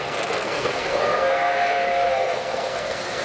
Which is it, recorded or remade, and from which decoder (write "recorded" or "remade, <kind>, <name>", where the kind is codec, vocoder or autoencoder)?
remade, codec, SNAC